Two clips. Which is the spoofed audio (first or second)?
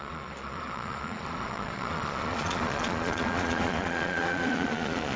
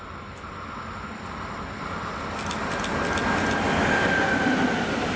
first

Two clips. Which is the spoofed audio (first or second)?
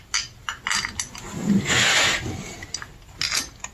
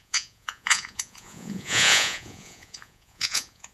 second